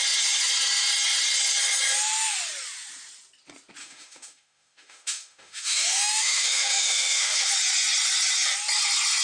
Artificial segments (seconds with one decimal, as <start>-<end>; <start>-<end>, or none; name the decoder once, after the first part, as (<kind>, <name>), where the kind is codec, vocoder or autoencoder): 3.8-7.5 (autoencoder, DAC-VAE)